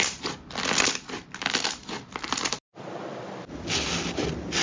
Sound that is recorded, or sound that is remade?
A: recorded